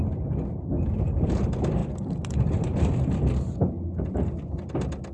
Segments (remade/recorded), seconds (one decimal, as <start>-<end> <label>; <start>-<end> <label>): 0.0-5.1 recorded